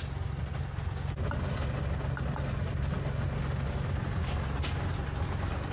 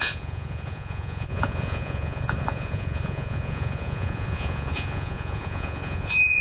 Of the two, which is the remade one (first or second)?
second